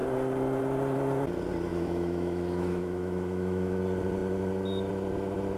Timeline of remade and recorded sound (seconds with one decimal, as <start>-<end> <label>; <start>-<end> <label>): 0.0-1.7 recorded; 1.7-3.8 remade; 3.8-5.6 recorded

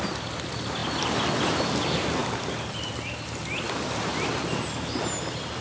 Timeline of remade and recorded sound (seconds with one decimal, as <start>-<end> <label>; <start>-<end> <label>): 0.0-5.6 recorded

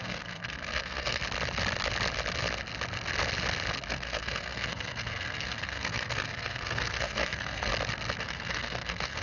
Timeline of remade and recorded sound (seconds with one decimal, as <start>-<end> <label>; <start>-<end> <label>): 0.0-1.2 remade; 1.2-3.9 recorded; 3.9-7.7 remade; 7.7-8.2 recorded; 8.2-9.2 remade

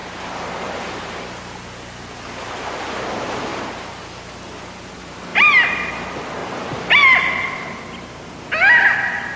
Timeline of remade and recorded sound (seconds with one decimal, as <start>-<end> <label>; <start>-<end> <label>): 0.0-1.2 remade; 1.2-3.5 recorded; 3.5-4.0 remade; 4.0-5.3 recorded; 5.3-5.9 remade; 5.9-9.4 recorded

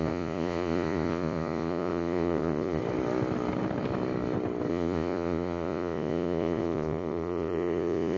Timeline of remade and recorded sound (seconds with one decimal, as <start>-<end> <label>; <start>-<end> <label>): 0.0-2.8 remade; 2.8-4.7 recorded; 4.7-8.2 remade

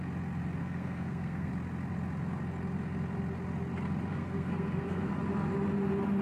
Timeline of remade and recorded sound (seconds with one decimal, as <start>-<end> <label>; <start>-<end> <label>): 0.0-0.6 recorded; 0.6-1.5 remade; 1.5-4.1 recorded; 4.1-5.1 remade; 5.1-6.2 recorded

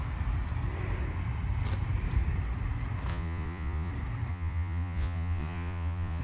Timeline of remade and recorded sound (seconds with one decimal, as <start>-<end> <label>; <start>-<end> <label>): 0.0-3.1 recorded; 3.1-3.9 remade; 3.9-4.3 recorded; 4.3-6.2 remade

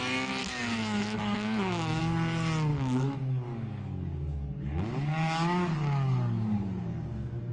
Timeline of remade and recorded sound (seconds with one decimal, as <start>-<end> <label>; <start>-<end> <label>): 0.0-0.4 recorded; 0.4-2.0 remade; 2.0-2.7 recorded; 2.7-7.5 remade